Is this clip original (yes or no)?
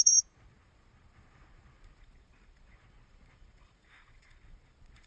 no